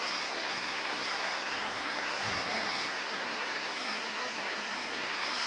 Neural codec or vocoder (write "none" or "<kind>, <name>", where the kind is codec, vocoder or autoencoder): codec, SNAC